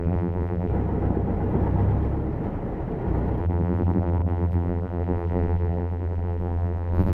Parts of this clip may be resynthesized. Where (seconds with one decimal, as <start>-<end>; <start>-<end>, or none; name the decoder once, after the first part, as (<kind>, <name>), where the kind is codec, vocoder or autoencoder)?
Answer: 0.0-0.7 (vocoder, BigVGAN v2); 3.4-7.1